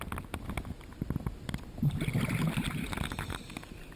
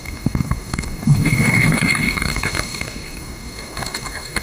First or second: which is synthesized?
second